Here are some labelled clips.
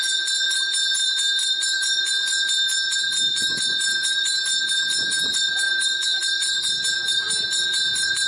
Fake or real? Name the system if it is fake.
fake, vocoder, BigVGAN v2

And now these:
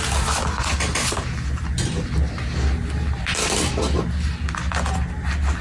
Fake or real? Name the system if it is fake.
real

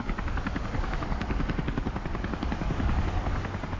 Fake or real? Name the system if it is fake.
fake, codec, DAC